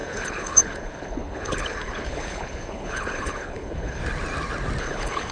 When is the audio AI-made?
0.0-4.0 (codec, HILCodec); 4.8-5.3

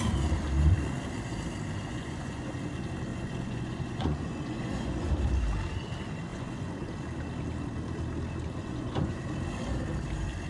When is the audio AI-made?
1.9-2.6 (vocoder, Vocos); 3.1-5.1; 6.3-6.9; 8.6-9.2

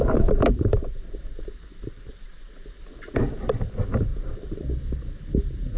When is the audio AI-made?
0.0-5.8 (vocoder, BigVGAN v2)